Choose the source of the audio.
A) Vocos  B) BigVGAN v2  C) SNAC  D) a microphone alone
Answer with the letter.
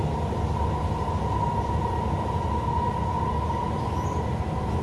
D